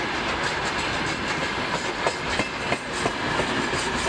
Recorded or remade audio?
recorded